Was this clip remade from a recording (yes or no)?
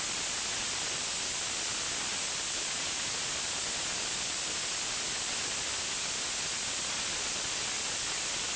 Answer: no